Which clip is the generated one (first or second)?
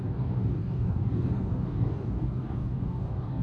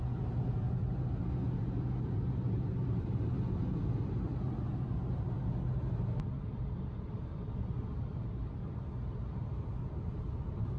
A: first